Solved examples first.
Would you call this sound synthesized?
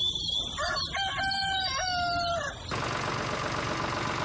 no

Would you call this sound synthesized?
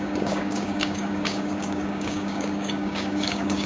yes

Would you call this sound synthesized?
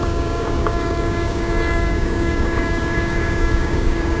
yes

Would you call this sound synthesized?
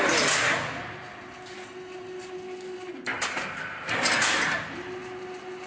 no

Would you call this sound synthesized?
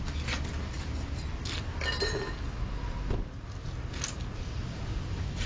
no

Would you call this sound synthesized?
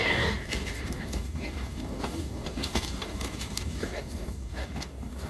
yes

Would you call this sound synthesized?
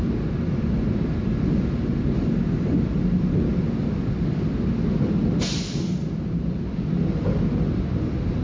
no